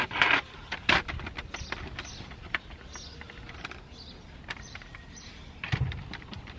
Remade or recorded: remade